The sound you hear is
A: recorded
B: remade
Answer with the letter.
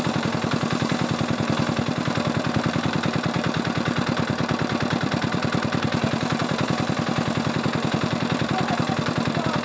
B